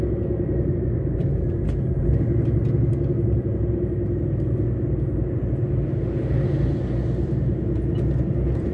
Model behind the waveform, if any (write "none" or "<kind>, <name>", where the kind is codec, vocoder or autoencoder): none